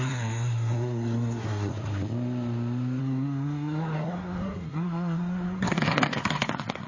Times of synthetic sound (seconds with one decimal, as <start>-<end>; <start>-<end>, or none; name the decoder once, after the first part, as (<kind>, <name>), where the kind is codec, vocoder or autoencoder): 0.0-1.7 (codec, SNAC); 3.0-6.9